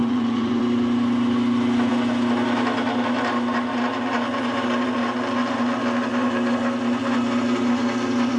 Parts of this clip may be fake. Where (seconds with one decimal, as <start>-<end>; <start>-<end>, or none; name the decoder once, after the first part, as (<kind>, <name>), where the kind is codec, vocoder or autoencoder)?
0.0-0.6 (vocoder, Vocos)